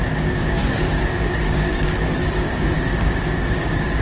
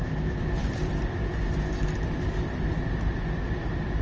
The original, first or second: second